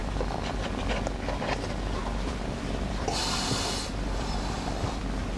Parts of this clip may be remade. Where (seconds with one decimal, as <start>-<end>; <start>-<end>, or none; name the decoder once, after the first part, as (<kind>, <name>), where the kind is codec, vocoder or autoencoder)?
0.0-1.0 (vocoder, BigVGAN v2); 2.0-5.4